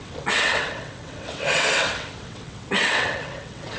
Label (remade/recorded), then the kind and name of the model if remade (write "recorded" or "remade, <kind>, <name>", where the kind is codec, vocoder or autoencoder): remade, vocoder, WaveNeXt